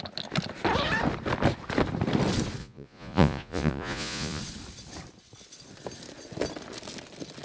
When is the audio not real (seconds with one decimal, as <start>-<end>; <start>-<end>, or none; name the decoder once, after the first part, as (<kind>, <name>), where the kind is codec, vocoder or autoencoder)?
2.6-4.4 (vocoder, Vocos)